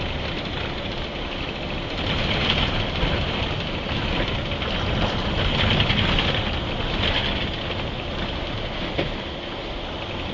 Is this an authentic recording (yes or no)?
yes